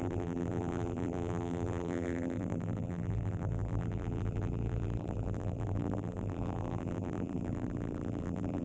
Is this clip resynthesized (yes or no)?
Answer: yes